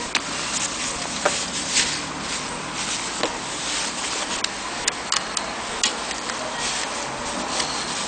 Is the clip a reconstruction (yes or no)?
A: no